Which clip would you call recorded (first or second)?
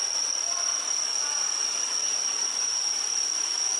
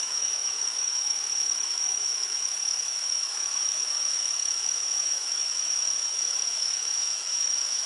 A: first